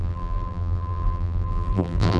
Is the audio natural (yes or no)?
no